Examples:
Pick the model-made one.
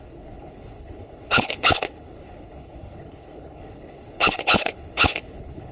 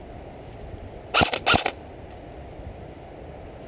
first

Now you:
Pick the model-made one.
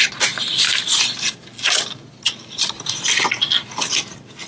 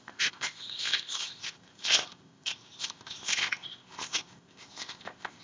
second